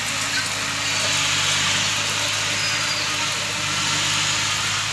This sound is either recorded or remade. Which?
recorded